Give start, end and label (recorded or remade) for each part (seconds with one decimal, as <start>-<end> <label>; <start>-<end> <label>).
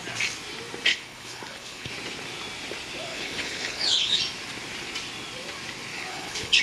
0.0-0.9 recorded; 0.9-1.9 remade; 1.9-3.1 recorded; 3.1-4.2 remade; 4.2-5.9 recorded; 5.9-6.6 remade